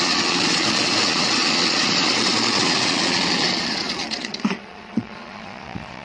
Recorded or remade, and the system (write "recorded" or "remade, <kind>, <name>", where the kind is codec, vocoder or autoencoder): remade, vocoder, Vocos